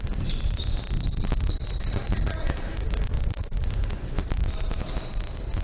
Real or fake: real